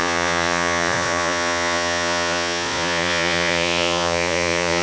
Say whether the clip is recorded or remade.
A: remade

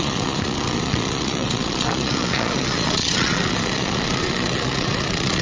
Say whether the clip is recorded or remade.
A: remade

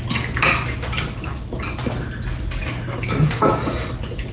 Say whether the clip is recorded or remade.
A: recorded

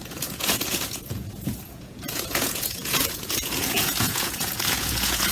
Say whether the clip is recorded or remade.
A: remade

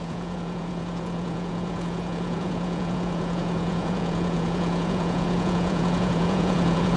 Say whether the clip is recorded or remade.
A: remade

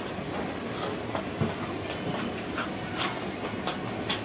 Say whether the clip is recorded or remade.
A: recorded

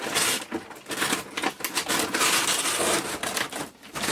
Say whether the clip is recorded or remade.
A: recorded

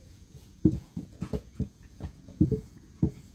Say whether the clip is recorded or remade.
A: remade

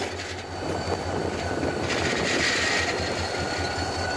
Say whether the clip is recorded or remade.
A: recorded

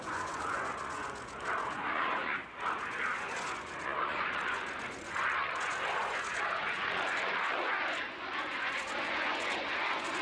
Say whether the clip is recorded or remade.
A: remade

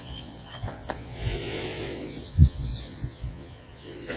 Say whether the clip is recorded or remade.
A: remade